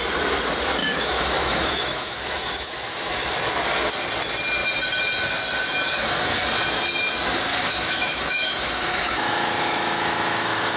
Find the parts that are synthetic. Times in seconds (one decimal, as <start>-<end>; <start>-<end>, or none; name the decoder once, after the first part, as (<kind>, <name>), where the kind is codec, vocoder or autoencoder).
0.8-3.1 (autoencoder, DAC-VAE); 7.5-10.8